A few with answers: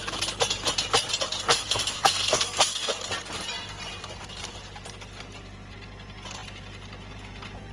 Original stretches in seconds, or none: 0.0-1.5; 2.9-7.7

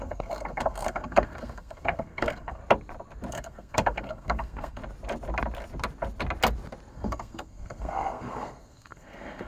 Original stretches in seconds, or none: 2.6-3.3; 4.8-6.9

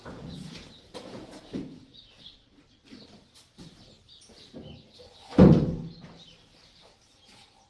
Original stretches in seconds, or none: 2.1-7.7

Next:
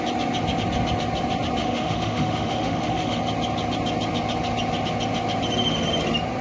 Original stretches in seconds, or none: 0.0-1.6; 3.2-6.4

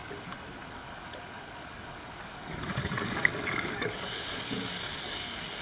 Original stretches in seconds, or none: 0.0-0.7

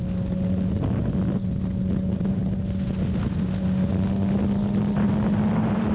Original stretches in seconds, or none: 0.0-5.9